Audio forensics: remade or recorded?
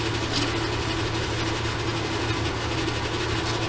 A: recorded